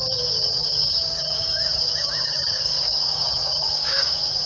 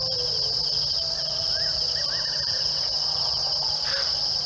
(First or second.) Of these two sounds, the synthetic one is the first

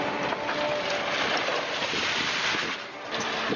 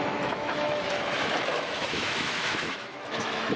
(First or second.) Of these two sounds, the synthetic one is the second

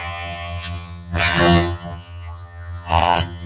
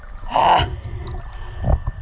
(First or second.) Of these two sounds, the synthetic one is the first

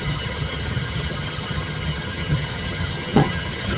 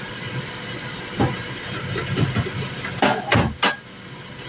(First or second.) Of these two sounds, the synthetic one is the first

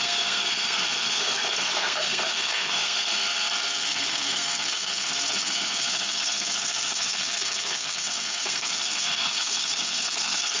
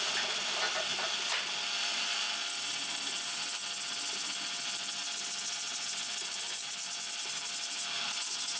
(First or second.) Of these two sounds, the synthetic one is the first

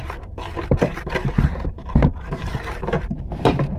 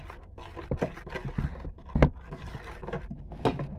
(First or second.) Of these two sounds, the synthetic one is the first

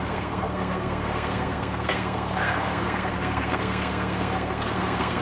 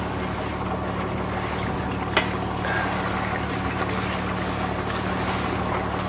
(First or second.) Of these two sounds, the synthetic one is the first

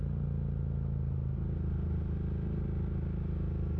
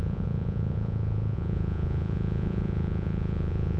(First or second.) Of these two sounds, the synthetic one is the second